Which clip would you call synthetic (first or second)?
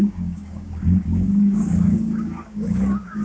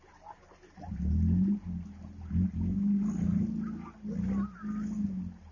first